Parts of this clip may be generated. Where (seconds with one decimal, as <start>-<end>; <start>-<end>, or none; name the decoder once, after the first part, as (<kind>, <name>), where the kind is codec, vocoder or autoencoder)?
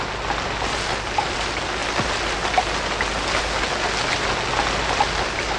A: none